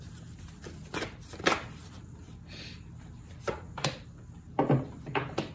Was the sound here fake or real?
real